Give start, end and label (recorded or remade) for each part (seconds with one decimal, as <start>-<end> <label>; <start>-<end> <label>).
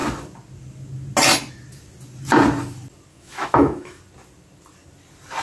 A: 0.0-3.1 recorded; 3.1-4.0 remade; 4.0-5.4 recorded